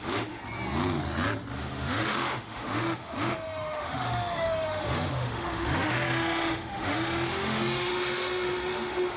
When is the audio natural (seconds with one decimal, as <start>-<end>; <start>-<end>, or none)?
0.4-1.5